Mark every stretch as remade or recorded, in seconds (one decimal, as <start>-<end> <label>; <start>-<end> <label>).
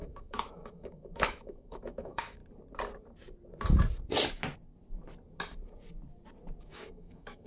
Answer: 0.0-2.4 remade; 2.4-6.6 recorded; 6.6-7.5 remade